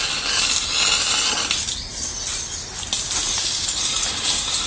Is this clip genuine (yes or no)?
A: yes